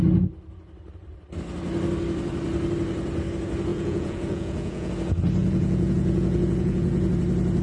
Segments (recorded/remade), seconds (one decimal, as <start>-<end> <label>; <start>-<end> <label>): 0.0-3.7 recorded; 3.7-4.9 remade; 4.9-5.4 recorded; 5.4-7.1 remade; 7.1-7.6 recorded